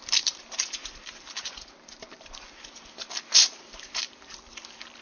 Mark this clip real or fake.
fake